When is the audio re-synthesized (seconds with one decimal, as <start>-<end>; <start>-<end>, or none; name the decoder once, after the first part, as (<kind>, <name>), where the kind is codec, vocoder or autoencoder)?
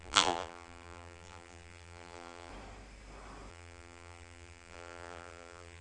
0.0-2.5 (vocoder, BigVGAN v2); 3.5-5.8